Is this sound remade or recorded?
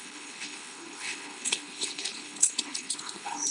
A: remade